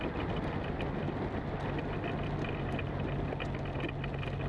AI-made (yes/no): no